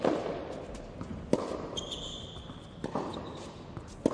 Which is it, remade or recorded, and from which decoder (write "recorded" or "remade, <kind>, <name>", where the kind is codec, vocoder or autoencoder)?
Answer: recorded